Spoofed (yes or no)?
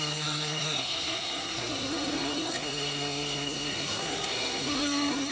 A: yes